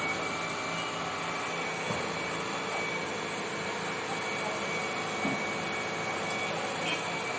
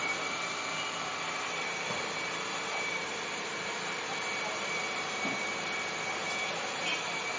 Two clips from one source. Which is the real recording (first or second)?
first